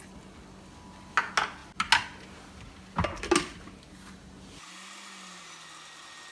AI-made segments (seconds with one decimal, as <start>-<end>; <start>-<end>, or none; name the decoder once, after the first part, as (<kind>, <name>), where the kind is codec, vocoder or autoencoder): none